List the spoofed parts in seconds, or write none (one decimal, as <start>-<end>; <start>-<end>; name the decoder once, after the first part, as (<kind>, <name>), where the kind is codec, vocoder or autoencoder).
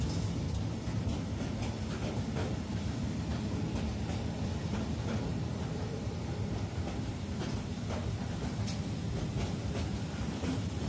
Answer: 5.3-6.1 (vocoder, BigVGAN v2)